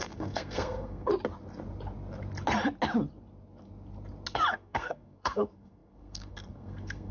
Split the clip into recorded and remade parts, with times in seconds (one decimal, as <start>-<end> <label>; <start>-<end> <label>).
0.0-1.1 remade; 1.1-4.5 recorded; 4.5-7.1 remade